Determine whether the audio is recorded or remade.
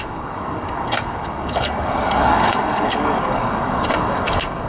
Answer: remade